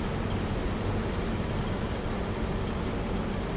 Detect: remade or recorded recorded